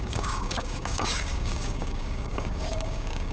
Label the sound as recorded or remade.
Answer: remade